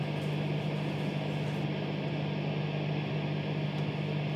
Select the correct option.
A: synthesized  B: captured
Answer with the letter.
B